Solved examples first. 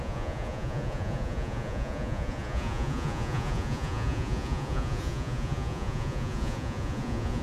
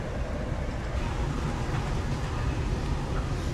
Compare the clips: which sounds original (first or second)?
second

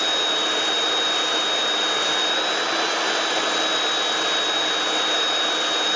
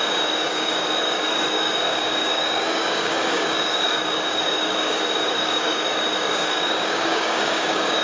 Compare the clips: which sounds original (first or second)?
first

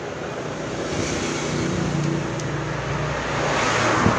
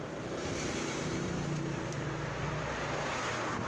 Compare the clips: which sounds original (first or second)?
first